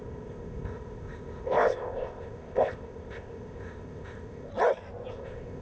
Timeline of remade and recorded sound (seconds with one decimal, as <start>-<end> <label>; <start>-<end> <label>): 0.0-4.5 remade; 4.5-5.1 recorded; 5.1-5.6 remade